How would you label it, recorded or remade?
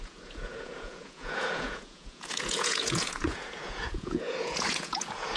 remade